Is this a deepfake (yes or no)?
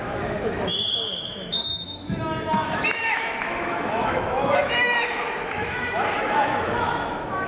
yes